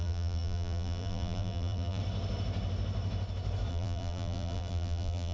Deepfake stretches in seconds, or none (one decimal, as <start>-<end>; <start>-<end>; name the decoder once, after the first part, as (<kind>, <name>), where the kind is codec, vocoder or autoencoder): 0.0-2.0 (vocoder, BigVGAN v2); 3.7-5.3